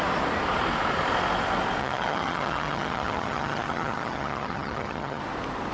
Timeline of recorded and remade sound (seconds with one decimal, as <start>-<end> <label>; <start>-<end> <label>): 0.0-1.8 recorded; 1.8-5.2 remade; 5.2-5.7 recorded